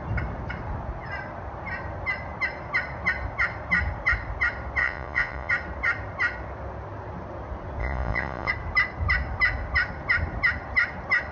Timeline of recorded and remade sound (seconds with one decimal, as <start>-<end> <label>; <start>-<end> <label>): 0.0-4.8 recorded; 4.8-5.5 remade; 5.5-7.8 recorded; 7.8-8.5 remade; 8.5-11.3 recorded

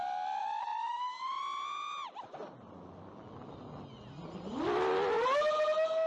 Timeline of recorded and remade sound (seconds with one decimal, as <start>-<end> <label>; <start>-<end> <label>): 0.0-6.1 recorded

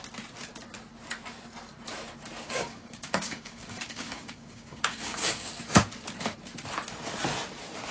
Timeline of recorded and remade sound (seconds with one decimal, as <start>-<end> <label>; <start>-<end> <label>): 0.0-2.4 recorded; 2.4-5.5 remade; 5.5-7.9 recorded

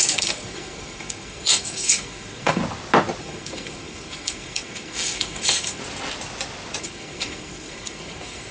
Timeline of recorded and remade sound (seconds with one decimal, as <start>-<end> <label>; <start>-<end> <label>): 0.0-2.6 remade; 2.6-3.2 recorded; 3.2-5.8 remade; 5.8-6.8 recorded; 6.8-8.5 remade

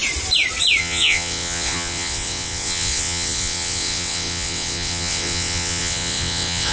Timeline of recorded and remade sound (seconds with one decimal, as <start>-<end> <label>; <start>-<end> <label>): 0.0-0.8 recorded; 0.8-6.7 remade

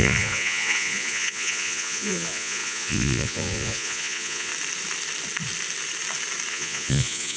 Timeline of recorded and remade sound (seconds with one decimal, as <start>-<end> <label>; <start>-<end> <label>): 0.0-4.5 remade; 4.5-6.5 recorded; 6.5-7.4 remade

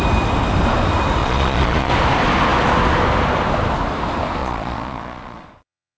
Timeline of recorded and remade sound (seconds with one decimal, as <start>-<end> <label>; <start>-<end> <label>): 0.0-1.2 recorded; 1.2-1.9 remade; 1.9-4.4 recorded; 4.4-6.0 remade

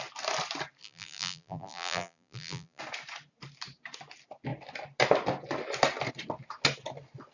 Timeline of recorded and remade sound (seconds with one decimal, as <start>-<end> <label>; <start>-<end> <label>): 0.0-0.8 recorded; 0.8-2.8 remade; 2.8-7.3 recorded